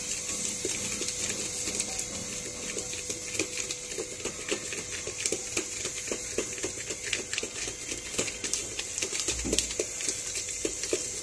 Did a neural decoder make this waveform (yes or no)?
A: no